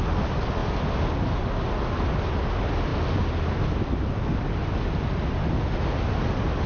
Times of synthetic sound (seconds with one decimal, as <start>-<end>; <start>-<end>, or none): none